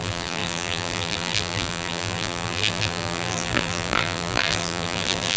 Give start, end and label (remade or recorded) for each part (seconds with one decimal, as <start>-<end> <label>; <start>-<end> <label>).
0.0-5.4 remade